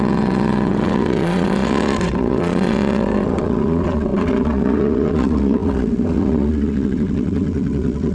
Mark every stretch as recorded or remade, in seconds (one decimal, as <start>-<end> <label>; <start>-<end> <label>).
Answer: 0.0-8.1 remade